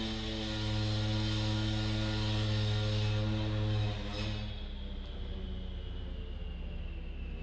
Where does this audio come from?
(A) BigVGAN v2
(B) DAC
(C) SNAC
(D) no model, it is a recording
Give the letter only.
D